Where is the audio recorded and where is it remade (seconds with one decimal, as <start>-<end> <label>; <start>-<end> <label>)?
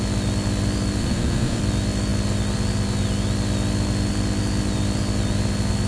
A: 0.0-1.0 recorded; 1.0-1.6 remade; 1.6-5.9 recorded